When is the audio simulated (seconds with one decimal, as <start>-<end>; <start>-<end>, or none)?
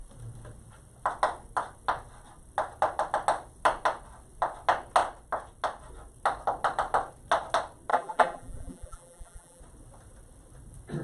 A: 7.9-9.6